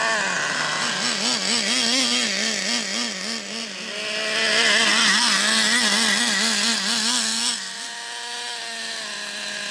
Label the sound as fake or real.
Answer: real